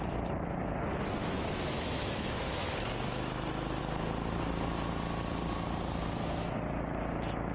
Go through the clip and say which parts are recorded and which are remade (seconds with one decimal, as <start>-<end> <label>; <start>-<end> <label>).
0.0-1.2 recorded; 1.2-3.8 remade; 3.8-7.5 recorded